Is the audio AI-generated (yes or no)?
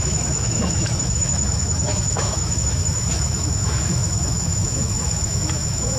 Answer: yes